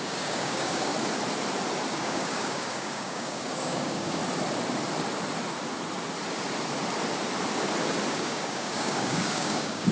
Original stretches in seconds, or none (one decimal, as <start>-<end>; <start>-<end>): 0.9-1.9; 4.2-8.1

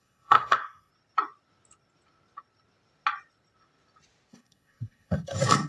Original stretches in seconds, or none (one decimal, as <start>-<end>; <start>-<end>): 0.9-4.3